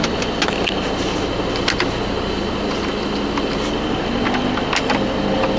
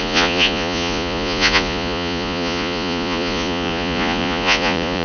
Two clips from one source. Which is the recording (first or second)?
first